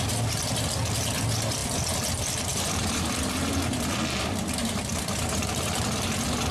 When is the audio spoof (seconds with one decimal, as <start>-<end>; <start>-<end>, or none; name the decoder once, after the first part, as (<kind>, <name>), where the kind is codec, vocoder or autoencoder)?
2.5-3.5 (vocoder, BigVGAN v2); 4.6-5.7

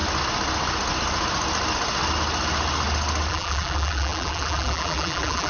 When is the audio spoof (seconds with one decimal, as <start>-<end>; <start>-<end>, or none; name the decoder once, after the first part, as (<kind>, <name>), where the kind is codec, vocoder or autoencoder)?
3.3-5.5 (vocoder, BigVGAN v2)

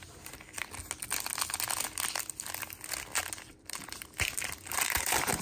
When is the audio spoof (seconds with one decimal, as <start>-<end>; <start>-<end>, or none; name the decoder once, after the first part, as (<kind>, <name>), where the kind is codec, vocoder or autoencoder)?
3.5-5.4 (vocoder, BigVGAN v2)

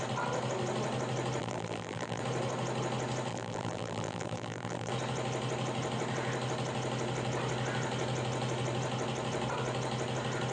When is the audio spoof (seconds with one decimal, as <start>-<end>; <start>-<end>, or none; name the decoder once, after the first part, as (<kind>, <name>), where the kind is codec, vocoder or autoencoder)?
1.4-2.2 (vocoder, BigVGAN v2); 3.3-4.9

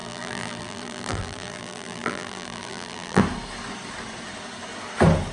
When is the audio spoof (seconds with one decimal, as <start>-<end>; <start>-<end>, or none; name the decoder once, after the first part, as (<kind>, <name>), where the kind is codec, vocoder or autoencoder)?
0.0-3.2 (vocoder, BigVGAN v2)

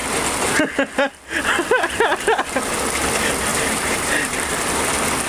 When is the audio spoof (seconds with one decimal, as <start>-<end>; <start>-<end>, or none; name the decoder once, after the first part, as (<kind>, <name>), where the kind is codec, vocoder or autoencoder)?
3.5-4.5 (vocoder, BigVGAN v2)